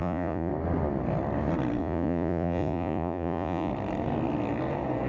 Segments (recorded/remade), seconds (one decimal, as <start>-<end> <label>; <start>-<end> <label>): 0.0-0.5 remade; 0.5-1.8 recorded; 1.8-3.7 remade; 3.7-5.1 recorded